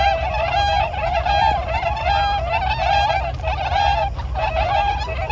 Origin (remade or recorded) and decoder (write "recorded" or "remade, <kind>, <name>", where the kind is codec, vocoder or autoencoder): recorded